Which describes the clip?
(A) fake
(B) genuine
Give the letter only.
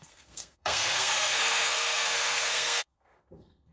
A